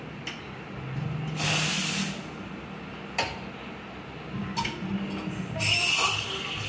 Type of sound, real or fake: real